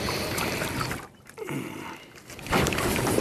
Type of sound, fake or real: real